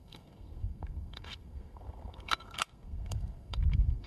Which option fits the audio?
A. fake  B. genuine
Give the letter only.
A